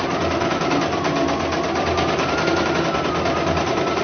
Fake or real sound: real